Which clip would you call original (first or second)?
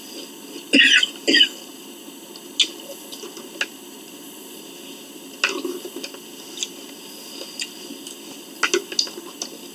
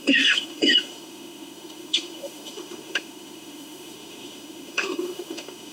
first